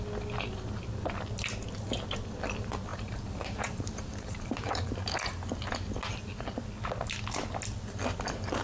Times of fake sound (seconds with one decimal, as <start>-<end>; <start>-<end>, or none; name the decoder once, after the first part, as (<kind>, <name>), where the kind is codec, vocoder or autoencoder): 2.9-4.9 (vocoder, BigVGAN v2)